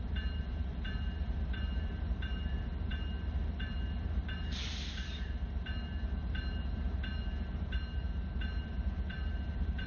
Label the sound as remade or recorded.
remade